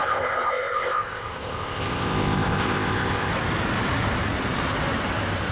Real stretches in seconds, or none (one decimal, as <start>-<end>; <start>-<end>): 3.3-5.5